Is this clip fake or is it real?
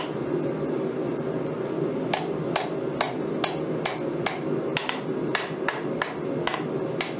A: real